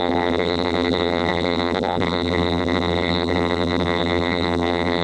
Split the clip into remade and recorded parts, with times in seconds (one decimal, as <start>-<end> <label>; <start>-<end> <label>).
0.0-5.0 remade